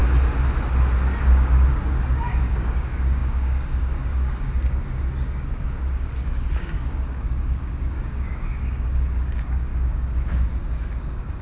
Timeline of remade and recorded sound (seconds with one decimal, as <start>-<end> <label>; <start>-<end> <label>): 0.0-1.2 recorded; 1.2-11.4 remade